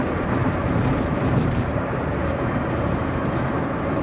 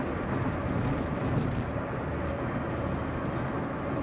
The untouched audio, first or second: second